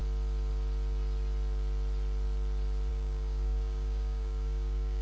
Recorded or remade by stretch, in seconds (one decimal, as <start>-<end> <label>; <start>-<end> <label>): 0.0-2.9 recorded; 2.9-5.0 remade